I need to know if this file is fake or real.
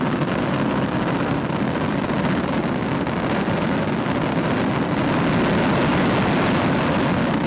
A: real